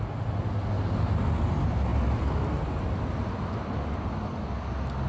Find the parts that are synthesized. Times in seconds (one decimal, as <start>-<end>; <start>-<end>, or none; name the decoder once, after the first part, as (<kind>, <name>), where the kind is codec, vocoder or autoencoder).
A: none